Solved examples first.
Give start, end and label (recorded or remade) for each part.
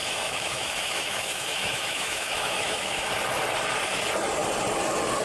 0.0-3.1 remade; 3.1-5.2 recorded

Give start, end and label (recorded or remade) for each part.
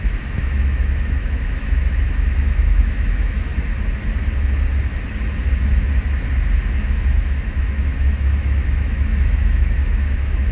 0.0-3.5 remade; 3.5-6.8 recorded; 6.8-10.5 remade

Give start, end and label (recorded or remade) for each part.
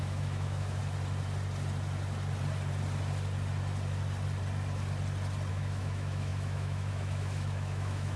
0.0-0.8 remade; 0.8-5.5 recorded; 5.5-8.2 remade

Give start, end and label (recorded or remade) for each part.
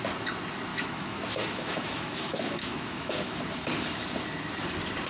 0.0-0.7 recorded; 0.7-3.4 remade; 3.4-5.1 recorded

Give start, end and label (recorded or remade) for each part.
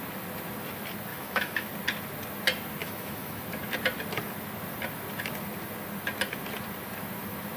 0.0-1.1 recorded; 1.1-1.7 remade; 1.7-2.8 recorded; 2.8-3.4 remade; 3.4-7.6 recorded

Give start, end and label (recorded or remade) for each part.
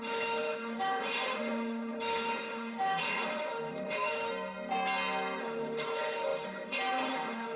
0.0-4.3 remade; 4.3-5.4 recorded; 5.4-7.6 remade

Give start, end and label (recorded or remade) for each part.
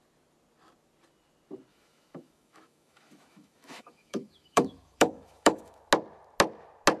0.0-1.7 recorded; 1.7-5.9 remade; 5.9-7.0 recorded